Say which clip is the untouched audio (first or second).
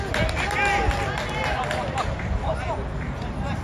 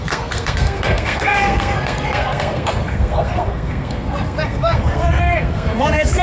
first